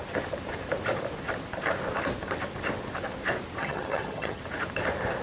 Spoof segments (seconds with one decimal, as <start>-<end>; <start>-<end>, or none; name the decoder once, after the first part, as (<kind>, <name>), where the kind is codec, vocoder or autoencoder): 3.6-4.4 (vocoder, HiFi-GAN)